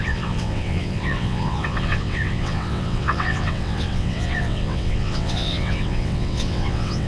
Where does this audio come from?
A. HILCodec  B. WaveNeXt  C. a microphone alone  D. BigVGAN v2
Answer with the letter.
B